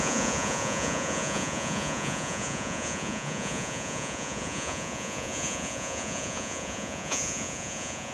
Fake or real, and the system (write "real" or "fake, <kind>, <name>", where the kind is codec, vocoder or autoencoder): fake, vocoder, Vocos